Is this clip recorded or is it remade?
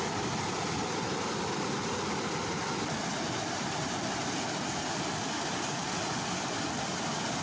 recorded